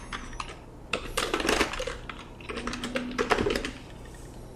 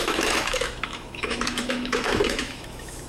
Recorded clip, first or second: first